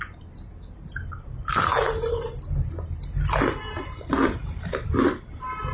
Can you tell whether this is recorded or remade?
recorded